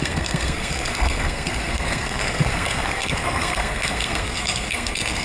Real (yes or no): no